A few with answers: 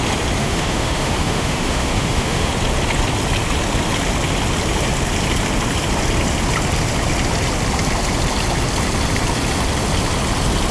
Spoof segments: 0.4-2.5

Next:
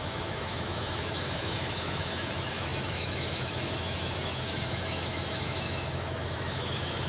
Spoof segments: 0.0-7.1